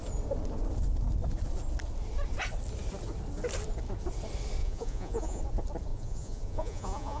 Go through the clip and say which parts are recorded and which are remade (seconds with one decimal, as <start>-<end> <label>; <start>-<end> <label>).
0.0-4.6 recorded; 4.6-5.4 remade; 5.4-5.9 recorded; 5.9-7.2 remade